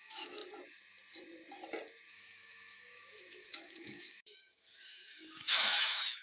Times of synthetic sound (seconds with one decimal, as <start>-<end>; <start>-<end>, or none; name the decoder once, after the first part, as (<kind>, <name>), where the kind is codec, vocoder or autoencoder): 0.0-0.4 (autoencoder, DAC-VAE); 2.1-6.2